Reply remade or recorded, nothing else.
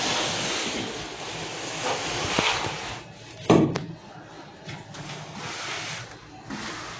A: recorded